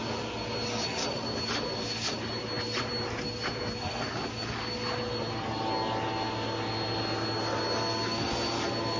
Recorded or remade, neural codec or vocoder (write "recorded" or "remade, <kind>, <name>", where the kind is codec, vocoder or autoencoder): recorded